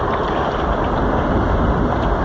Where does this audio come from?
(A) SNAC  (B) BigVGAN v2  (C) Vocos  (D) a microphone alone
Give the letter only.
D